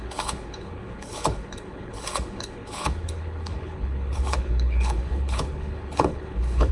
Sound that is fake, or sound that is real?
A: fake